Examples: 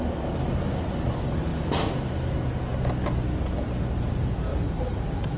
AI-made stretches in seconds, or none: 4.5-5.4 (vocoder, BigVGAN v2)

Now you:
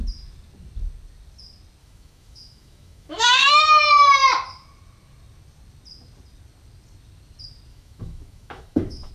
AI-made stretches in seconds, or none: 1.8-3.6 (autoencoder, DAC-VAE); 7.7-9.1